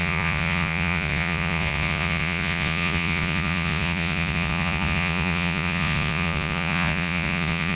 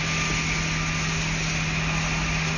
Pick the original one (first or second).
second